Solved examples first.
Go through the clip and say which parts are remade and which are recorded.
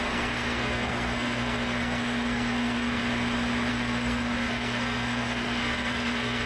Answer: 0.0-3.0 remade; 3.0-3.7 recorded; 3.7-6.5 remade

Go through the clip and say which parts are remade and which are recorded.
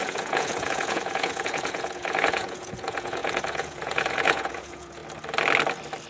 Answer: 0.0-5.0 remade; 5.0-6.1 recorded